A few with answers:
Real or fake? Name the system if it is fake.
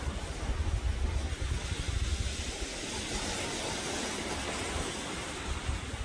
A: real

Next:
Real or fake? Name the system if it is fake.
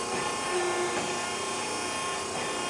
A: real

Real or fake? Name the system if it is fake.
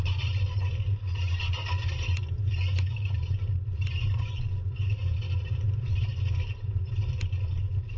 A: real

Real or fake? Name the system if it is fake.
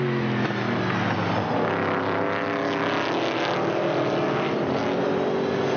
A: real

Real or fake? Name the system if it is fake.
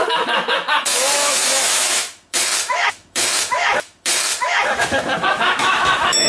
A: fake, autoencoder, DAC-VAE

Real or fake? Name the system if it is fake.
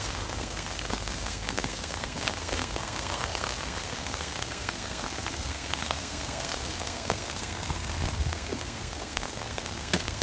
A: fake, codec, SNAC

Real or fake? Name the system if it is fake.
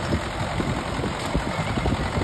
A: real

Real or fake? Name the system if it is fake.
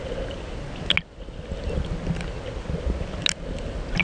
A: real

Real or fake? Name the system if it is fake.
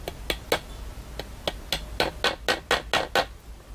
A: real